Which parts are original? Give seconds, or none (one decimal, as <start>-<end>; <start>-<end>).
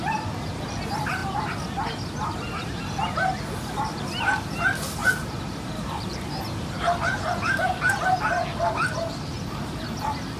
0.0-5.0; 7.9-10.4